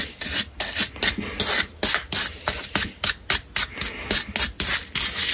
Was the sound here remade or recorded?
recorded